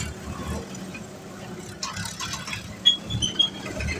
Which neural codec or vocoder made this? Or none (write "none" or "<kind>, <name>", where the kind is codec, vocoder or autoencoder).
none